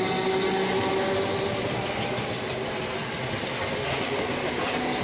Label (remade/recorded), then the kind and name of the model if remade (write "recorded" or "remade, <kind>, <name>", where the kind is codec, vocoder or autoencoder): recorded